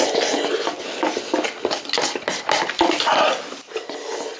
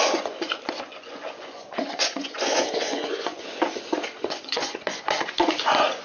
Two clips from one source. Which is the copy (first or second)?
second